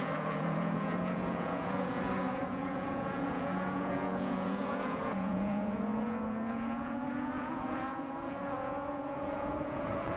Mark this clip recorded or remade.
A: remade